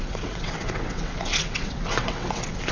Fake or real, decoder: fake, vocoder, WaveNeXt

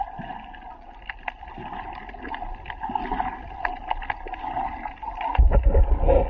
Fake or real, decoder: real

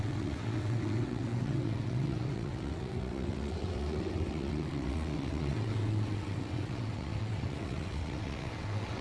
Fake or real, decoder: fake, vocoder, WaveNeXt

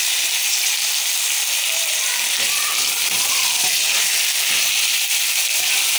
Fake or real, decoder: real